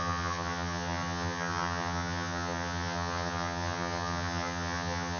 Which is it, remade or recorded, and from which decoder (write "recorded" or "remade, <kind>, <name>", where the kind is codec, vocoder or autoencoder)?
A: remade, vocoder, HiFi-GAN